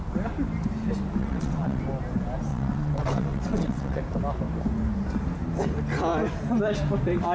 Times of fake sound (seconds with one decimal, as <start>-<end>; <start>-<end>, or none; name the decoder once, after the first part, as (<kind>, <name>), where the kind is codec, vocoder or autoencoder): 1.2-1.8 (vocoder, WaveNeXt); 2.5-4.0